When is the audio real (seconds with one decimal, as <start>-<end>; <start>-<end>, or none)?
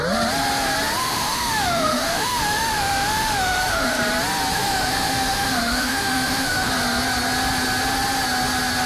0.0-1.0; 4.0-4.5; 6.7-8.9